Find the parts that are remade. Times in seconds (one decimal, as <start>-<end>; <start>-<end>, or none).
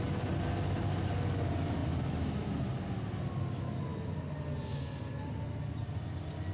none